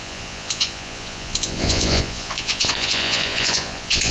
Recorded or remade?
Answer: remade